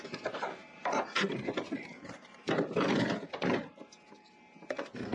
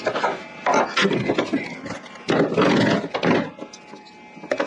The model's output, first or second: first